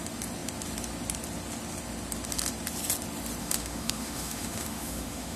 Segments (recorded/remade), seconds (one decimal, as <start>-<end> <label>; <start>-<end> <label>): 0.0-3.4 recorded; 3.4-5.4 remade